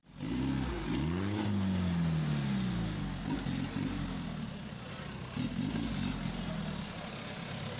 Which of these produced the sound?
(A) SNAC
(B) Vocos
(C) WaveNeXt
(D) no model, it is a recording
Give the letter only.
D